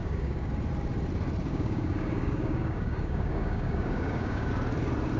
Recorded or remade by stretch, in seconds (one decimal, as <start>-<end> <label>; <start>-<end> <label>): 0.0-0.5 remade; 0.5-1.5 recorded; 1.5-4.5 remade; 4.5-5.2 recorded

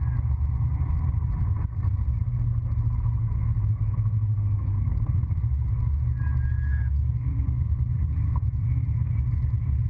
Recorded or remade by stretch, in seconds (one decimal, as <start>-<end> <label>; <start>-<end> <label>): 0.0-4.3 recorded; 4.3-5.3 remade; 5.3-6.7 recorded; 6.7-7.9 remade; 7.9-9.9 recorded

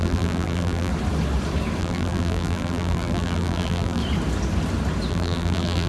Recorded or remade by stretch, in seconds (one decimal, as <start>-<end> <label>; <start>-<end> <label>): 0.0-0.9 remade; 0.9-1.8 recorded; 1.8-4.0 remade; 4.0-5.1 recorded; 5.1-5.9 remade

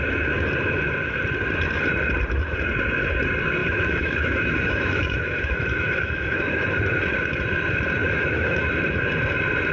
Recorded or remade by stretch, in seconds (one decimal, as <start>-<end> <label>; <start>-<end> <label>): 0.0-3.6 recorded; 3.6-6.8 remade; 6.8-8.0 recorded; 8.0-8.7 remade; 8.7-9.7 recorded

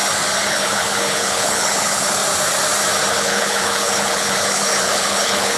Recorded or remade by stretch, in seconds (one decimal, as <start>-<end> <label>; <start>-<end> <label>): 0.0-0.5 recorded; 0.5-2.2 remade; 2.2-3.1 recorded; 3.1-5.6 remade